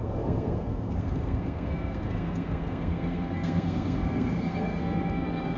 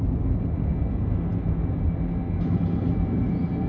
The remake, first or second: first